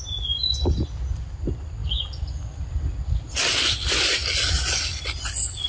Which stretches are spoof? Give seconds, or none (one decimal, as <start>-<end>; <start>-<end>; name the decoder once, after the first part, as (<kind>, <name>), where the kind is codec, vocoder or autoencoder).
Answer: none